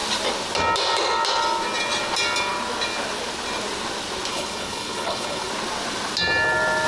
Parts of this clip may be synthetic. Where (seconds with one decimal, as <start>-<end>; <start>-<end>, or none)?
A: 4.3-5.5